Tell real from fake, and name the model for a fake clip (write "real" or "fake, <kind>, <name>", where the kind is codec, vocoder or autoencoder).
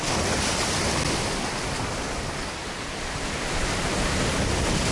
real